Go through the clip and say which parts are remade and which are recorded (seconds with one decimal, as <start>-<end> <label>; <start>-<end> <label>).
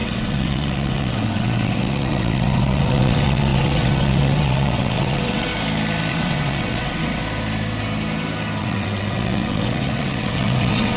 0.0-5.5 remade; 5.5-6.1 recorded; 6.1-7.2 remade; 7.2-8.6 recorded; 8.6-11.0 remade